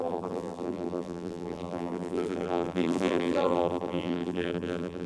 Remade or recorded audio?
remade